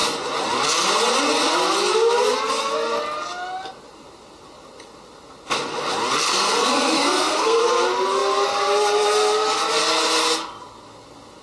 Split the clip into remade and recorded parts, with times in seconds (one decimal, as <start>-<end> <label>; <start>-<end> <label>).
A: 0.0-6.2 recorded; 6.2-7.6 remade; 7.6-11.4 recorded